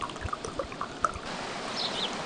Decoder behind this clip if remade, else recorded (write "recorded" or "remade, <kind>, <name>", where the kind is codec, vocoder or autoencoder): recorded